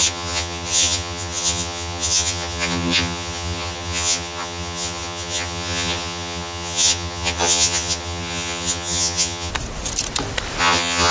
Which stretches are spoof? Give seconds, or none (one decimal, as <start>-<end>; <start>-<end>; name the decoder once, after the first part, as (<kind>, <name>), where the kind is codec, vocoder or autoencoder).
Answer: 0.0-9.5 (vocoder, HiFi-GAN); 10.6-11.1